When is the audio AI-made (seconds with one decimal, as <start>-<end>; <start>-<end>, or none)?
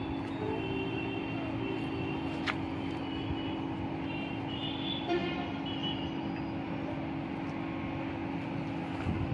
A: none